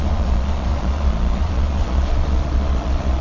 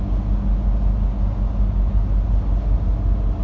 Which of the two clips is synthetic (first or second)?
first